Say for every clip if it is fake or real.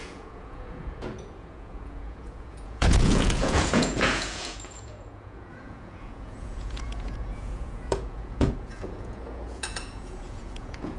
fake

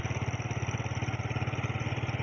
real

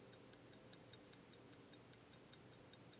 real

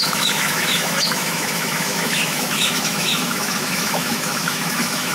fake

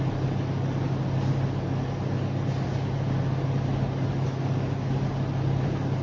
real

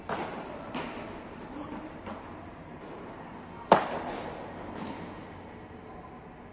real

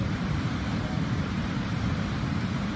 fake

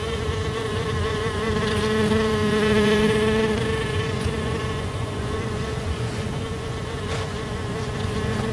fake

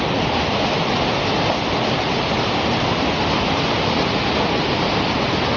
real